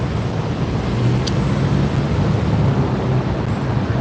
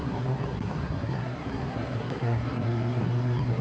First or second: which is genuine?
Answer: first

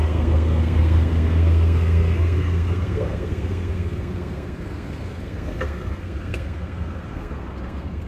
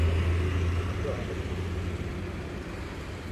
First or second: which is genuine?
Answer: second